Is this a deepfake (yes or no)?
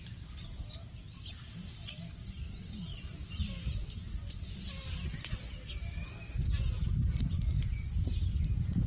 no